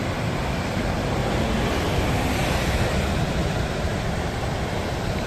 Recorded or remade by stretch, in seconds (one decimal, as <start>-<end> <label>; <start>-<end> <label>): 0.0-1.2 remade; 1.2-4.4 recorded; 4.4-5.3 remade